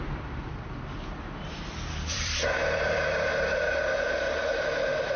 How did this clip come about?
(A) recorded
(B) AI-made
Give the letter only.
B